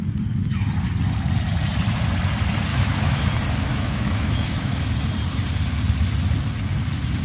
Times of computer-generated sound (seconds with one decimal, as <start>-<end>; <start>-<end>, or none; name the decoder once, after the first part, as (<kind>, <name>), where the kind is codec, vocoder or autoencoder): 2.7-3.3 (autoencoder, DAC-VAE); 3.7-4.8

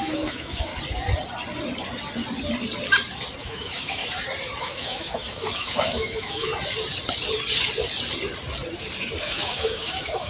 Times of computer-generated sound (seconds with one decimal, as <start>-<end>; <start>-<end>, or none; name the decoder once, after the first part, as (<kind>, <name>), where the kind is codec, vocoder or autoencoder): 0.0-0.7 (autoencoder, DAC-VAE); 3.4-4.0; 4.6-6.5; 9.2-10.3

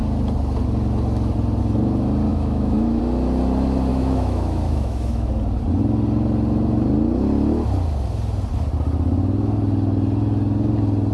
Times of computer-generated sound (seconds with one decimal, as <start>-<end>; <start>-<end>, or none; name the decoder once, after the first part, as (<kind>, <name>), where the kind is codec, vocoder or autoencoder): 2.3-3.0 (autoencoder, DAC-VAE); 3.9-5.3

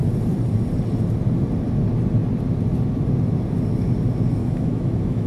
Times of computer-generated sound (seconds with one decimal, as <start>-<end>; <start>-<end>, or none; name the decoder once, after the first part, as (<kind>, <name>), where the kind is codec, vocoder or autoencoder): 4.4-5.3 (autoencoder, DAC-VAE)

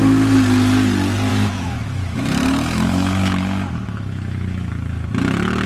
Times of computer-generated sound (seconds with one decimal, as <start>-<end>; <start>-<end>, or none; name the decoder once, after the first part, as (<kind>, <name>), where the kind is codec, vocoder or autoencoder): 1.3-4.7 (autoencoder, DAC-VAE)

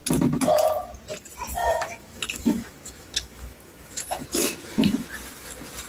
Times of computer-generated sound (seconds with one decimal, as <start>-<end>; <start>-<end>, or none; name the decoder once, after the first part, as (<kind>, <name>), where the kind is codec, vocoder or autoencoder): 1.6-5.1 (autoencoder, DAC-VAE)